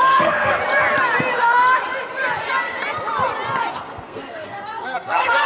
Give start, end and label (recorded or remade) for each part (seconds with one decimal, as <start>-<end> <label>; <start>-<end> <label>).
0.0-0.6 remade; 0.6-3.7 recorded; 3.7-5.5 remade